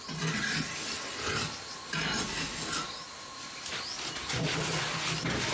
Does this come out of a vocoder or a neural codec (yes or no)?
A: no